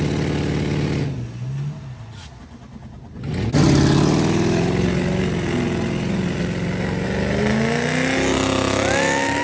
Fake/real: real